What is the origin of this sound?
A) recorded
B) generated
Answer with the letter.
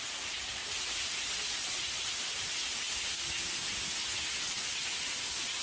A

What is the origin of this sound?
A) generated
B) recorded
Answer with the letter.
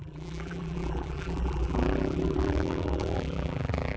A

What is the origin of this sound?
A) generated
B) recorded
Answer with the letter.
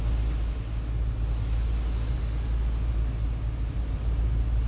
B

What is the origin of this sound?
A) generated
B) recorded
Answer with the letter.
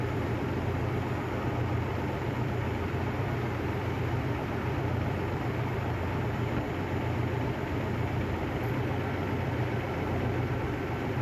A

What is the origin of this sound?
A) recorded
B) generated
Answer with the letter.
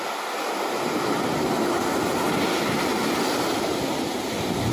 A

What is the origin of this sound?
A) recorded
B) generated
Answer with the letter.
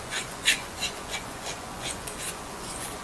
B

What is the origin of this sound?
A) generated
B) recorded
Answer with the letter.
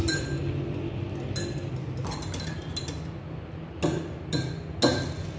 B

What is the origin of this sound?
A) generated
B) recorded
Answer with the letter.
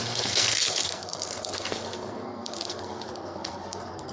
A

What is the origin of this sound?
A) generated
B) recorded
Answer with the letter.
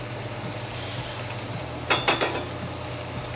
B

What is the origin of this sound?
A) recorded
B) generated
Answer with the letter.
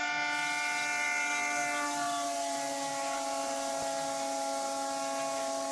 A